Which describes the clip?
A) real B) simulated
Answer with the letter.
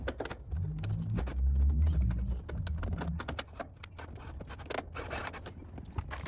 A